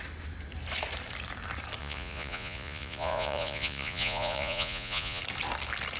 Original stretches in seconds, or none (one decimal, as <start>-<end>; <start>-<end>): 0.0-1.8; 5.2-6.0